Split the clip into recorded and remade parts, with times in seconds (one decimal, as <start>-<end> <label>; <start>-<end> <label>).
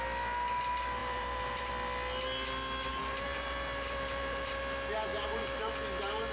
0.0-1.0 recorded; 1.0-1.7 remade; 1.7-2.9 recorded; 2.9-4.6 remade; 4.6-5.1 recorded; 5.1-5.6 remade; 5.6-6.3 recorded